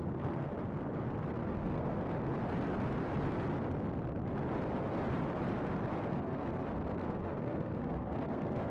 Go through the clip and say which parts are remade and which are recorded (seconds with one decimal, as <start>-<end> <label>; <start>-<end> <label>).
0.0-0.5 remade; 0.5-1.3 recorded; 1.3-2.0 remade; 2.0-6.1 recorded; 6.1-8.7 remade